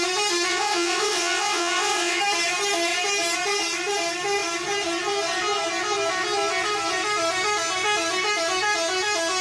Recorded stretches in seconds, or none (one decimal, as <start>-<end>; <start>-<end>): 0.0-0.5; 2.2-9.4